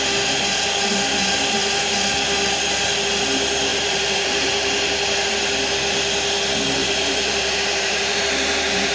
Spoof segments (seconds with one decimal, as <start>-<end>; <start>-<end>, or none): 3.7-4.7; 6.8-8.9